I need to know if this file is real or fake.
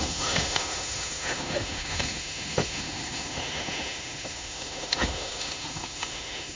fake